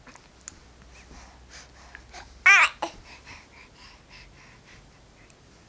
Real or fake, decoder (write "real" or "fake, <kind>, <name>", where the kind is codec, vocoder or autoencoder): real